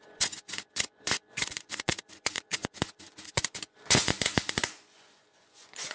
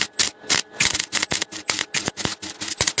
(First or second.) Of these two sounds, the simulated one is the first